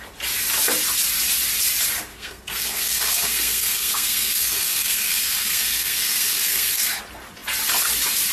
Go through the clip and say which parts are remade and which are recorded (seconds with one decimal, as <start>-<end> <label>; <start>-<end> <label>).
0.0-2.1 recorded; 2.1-7.0 remade; 7.0-8.3 recorded